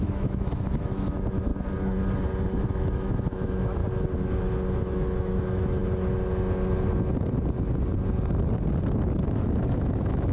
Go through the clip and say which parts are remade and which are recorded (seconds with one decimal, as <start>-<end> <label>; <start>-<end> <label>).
0.0-1.5 remade; 1.5-2.6 recorded; 2.6-3.8 remade; 3.8-4.8 recorded; 4.8-5.8 remade; 5.8-8.9 recorded; 8.9-10.3 remade